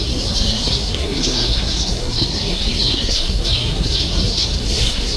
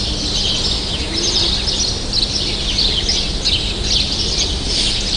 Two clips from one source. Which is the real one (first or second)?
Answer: second